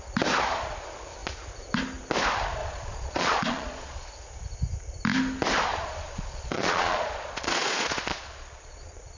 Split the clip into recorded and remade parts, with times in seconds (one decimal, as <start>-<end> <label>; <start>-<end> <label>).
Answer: 0.0-2.6 recorded; 2.6-4.1 remade; 4.1-5.7 recorded; 5.7-9.2 remade